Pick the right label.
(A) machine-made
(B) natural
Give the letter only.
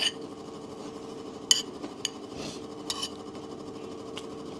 B